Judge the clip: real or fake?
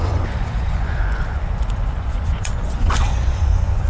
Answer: fake